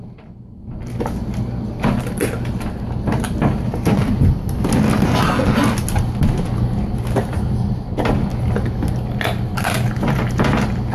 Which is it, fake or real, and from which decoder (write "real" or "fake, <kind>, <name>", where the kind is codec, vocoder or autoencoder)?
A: real